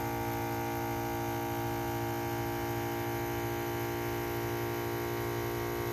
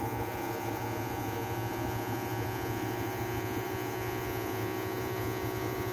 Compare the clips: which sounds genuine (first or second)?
first